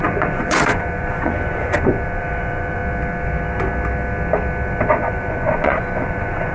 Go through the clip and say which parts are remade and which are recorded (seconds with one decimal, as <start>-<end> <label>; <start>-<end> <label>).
0.0-2.8 remade; 2.8-5.1 recorded; 5.1-6.5 remade